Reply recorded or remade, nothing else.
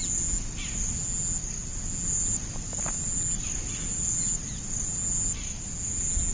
recorded